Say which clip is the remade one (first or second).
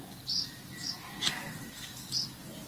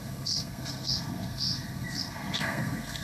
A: second